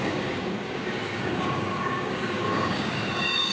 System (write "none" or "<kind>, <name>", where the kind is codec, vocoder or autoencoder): codec, DAC